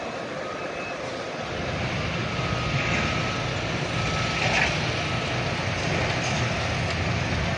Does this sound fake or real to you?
real